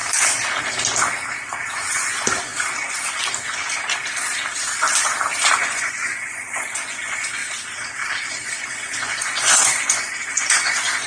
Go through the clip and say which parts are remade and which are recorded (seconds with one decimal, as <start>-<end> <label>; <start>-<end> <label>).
0.0-1.9 recorded; 1.9-2.5 remade; 2.5-5.6 recorded; 5.6-7.4 remade; 7.4-8.3 recorded; 8.3-11.1 remade

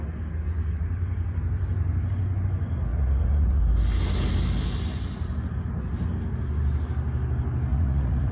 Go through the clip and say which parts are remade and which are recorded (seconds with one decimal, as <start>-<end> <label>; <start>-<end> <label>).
0.0-2.9 recorded; 2.9-3.6 remade; 3.6-7.7 recorded; 7.7-8.3 remade

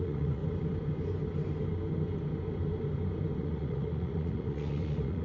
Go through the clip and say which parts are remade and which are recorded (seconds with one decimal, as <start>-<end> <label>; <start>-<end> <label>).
0.0-0.4 remade; 0.4-3.4 recorded; 3.4-5.2 remade

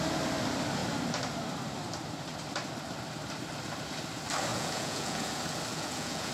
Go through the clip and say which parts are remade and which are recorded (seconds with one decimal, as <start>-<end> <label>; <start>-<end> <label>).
0.0-4.5 recorded; 4.5-5.3 remade; 5.3-5.7 recorded; 5.7-6.3 remade